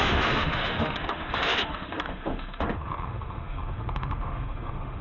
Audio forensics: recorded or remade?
remade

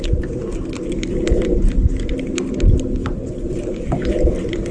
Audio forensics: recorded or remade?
recorded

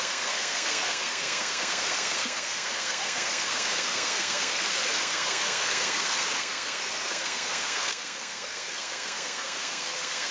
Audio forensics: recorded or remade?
remade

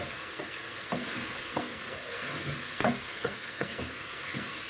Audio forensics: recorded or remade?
remade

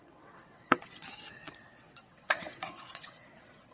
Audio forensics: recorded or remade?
remade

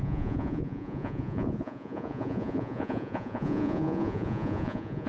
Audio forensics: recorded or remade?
remade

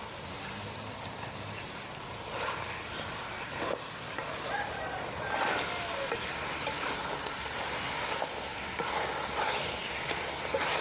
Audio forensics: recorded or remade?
recorded